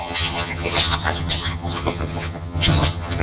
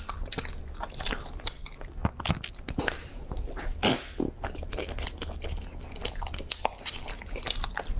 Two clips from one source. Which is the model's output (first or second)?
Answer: first